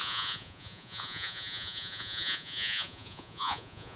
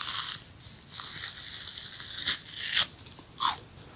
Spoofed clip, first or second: first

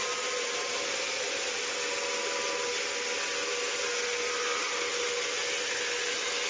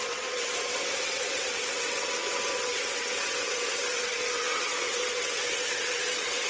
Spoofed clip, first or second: second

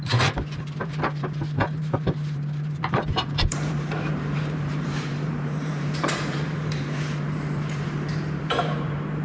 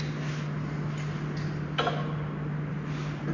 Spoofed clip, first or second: first